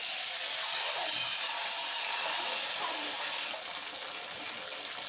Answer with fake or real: real